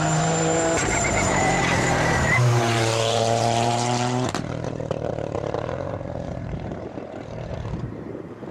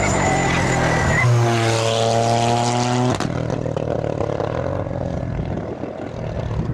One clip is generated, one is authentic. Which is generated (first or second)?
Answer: first